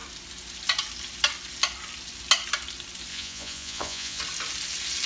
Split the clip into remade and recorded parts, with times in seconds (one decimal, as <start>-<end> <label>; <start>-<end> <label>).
0.0-3.1 recorded; 3.1-4.2 remade; 4.2-5.1 recorded